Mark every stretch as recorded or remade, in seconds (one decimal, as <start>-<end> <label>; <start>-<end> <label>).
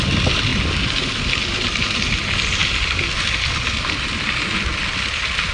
0.0-5.5 recorded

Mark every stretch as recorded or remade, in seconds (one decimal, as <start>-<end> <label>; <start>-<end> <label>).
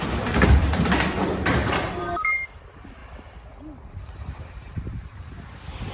0.0-3.0 remade; 3.0-4.0 recorded; 4.0-5.9 remade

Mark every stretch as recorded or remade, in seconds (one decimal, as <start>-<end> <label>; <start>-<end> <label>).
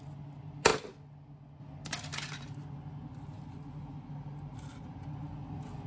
0.0-5.9 recorded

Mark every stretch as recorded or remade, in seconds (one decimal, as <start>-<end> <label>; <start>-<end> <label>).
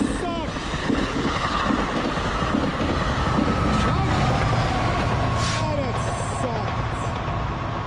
0.0-0.8 recorded; 0.8-1.6 remade; 1.6-7.9 recorded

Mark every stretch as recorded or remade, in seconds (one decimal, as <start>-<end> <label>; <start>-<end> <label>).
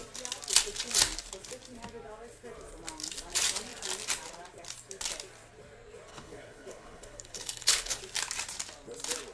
0.0-6.1 recorded; 6.1-8.0 remade; 8.0-9.3 recorded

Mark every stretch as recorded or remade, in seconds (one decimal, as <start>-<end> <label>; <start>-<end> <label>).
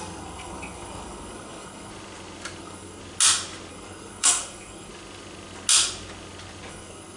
0.0-1.9 remade; 1.9-2.6 recorded; 2.6-3.0 remade; 3.0-3.7 recorded; 3.7-4.9 remade; 4.9-6.7 recorded; 6.7-7.2 remade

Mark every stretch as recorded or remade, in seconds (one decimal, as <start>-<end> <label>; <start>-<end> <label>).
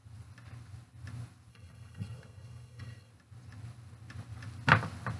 0.0-1.5 recorded; 1.5-3.1 remade; 3.1-5.2 recorded